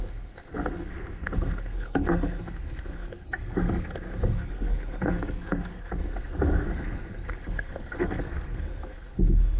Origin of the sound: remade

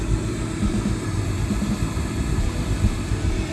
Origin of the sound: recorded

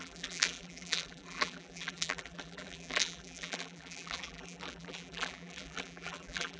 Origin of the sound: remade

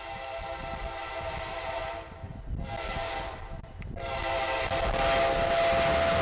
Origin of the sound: recorded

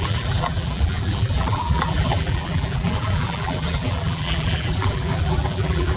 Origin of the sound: remade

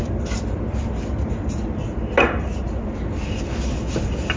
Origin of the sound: recorded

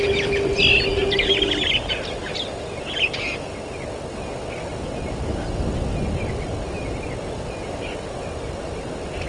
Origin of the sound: recorded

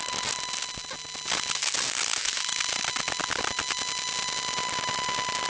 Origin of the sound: recorded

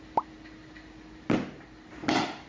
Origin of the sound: remade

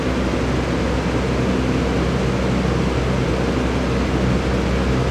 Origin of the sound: recorded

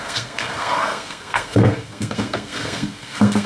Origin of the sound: remade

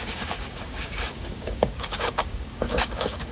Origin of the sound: remade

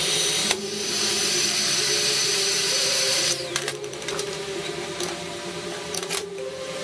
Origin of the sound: remade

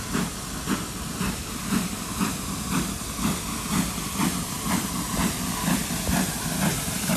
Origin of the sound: remade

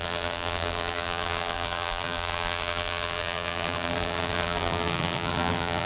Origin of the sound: remade